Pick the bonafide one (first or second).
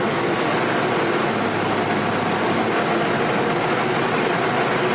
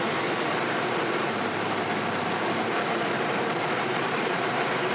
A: first